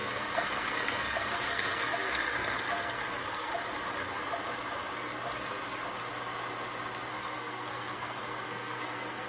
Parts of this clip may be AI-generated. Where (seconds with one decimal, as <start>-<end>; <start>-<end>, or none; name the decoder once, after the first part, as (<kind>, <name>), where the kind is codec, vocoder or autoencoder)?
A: 0.0-3.5 (codec, SNAC); 7.1-9.3